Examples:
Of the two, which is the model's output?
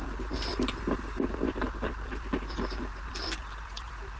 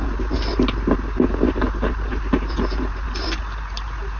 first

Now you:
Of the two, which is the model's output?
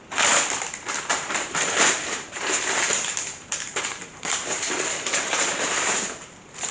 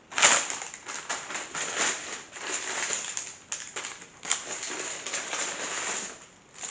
first